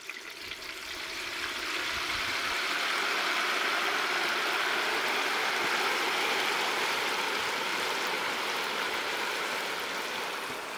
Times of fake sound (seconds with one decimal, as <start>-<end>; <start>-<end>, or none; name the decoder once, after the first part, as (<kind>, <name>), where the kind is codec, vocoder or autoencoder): 7.7-9.7 (vocoder, BigVGAN v2)